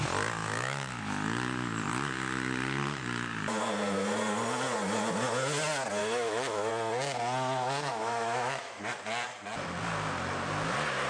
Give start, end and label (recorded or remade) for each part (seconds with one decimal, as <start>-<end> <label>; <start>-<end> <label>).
0.0-0.4 recorded; 0.4-1.0 remade; 1.0-6.0 recorded; 6.0-6.7 remade; 6.7-7.9 recorded; 7.9-8.8 remade; 8.8-11.1 recorded